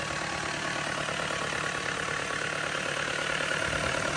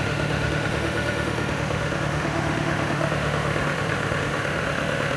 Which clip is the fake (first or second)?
second